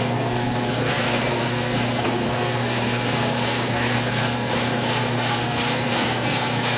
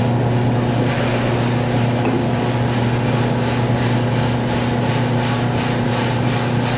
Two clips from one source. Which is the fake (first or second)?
first